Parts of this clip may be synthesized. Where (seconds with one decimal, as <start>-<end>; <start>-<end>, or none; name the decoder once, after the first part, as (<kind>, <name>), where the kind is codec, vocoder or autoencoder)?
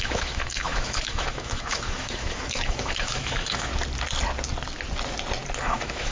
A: 0.0-3.7 (autoencoder, DAC-VAE); 5.6-6.1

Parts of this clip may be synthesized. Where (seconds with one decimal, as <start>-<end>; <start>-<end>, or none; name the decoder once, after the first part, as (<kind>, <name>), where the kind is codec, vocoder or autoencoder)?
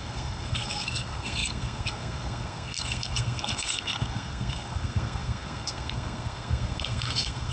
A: 0.0-7.5 (codec, SNAC)